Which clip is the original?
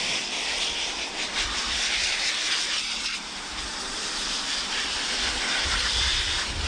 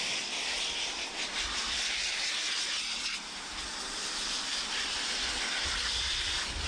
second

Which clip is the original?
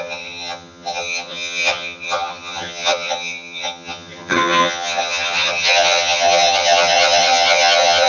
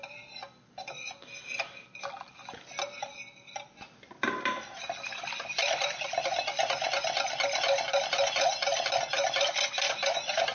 second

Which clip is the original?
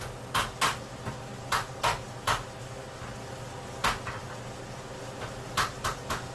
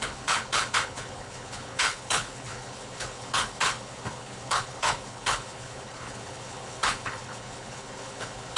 first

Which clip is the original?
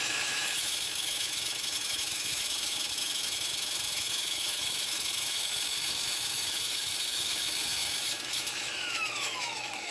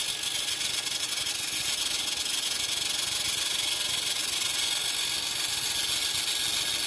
second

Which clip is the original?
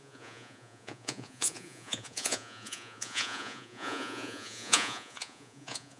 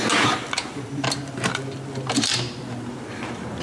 second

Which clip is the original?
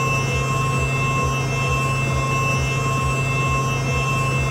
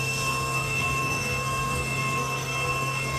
first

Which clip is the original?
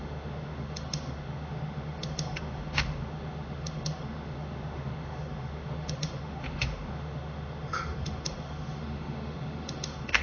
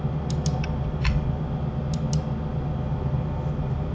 second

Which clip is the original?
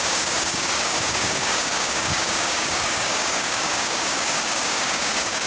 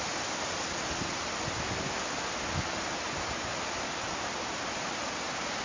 second